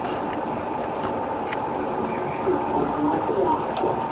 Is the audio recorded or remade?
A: recorded